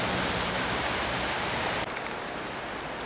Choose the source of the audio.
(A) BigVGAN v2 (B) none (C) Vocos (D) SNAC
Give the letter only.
A